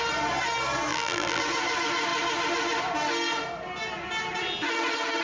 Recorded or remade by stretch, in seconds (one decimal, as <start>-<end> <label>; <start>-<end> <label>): 0.0-0.9 recorded; 0.9-1.4 remade; 1.4-5.2 recorded